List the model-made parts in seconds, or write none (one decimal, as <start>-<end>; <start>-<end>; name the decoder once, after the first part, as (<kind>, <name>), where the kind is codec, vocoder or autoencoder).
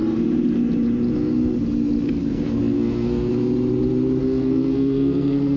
2.2-3.3 (codec, SNAC); 4.2-5.6